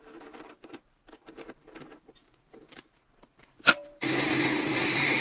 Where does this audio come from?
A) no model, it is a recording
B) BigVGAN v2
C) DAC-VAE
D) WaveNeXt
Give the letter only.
B